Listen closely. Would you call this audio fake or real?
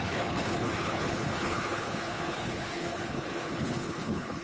fake